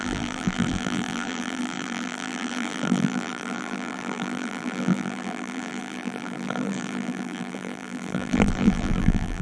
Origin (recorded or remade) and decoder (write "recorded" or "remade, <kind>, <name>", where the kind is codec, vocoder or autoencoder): remade, vocoder, BigVGAN v2